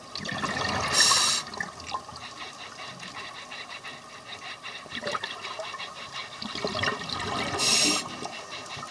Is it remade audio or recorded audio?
recorded